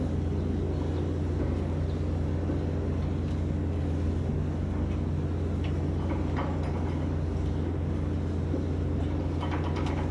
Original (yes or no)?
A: yes